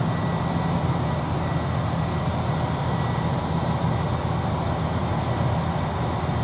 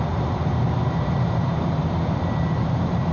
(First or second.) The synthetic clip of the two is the second